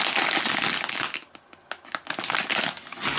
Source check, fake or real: real